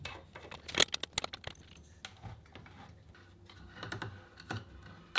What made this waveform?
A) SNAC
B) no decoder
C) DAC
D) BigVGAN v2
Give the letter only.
B